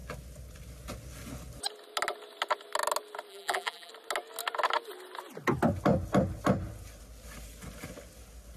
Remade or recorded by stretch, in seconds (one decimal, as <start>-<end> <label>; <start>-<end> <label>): 0.0-3.3 recorded; 3.3-3.9 remade; 3.9-8.6 recorded